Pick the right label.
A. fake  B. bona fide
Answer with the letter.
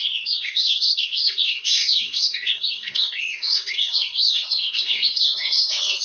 A